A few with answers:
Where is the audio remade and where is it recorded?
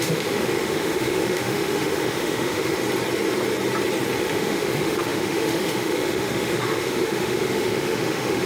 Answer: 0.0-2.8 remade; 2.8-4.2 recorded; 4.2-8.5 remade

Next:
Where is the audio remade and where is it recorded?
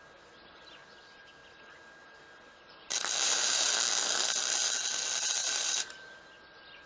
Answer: 0.0-1.4 recorded; 1.4-2.2 remade; 2.2-3.2 recorded; 3.2-3.7 remade; 3.7-5.4 recorded; 5.4-6.2 remade; 6.2-6.9 recorded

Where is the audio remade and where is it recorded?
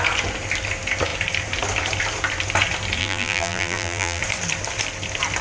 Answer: 0.0-3.0 recorded; 3.0-4.2 remade; 4.2-5.4 recorded